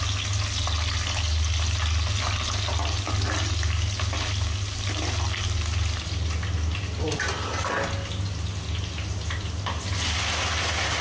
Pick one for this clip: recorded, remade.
recorded